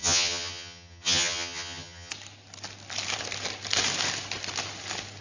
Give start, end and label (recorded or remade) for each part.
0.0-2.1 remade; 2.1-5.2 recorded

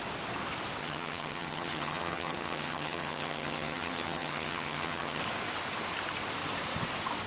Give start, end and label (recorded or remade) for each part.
0.0-0.8 recorded; 0.8-5.2 remade; 5.2-7.3 recorded